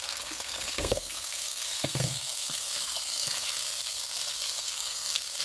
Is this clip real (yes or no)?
no